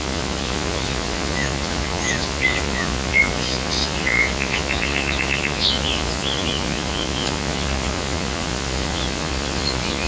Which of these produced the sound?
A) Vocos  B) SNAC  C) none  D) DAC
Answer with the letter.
A